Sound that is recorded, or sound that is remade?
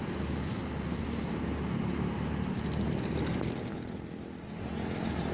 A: recorded